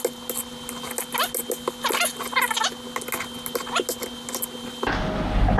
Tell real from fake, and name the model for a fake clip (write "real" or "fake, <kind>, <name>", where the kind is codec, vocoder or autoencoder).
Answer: real